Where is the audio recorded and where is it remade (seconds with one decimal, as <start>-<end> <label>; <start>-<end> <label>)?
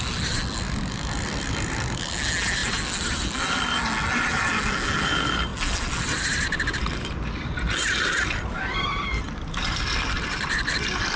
0.0-11.2 recorded